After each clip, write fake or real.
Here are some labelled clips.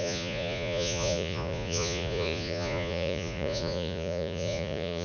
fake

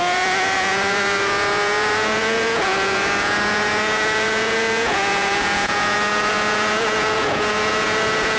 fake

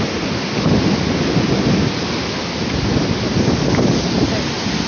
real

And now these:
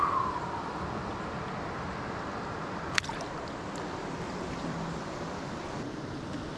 real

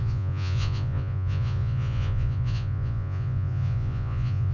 fake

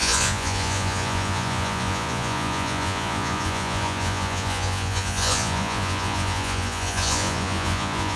fake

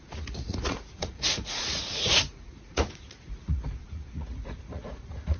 fake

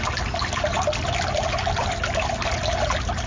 real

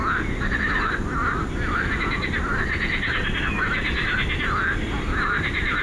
real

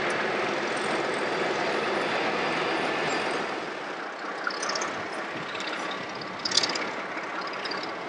real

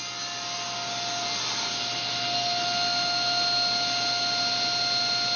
real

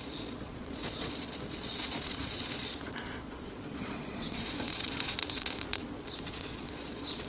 fake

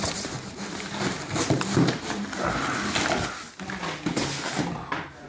real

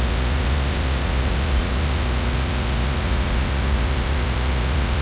fake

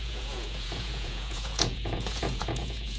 fake